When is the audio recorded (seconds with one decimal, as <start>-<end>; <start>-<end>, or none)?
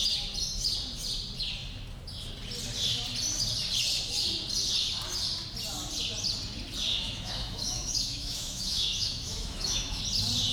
0.0-6.9; 10.0-10.5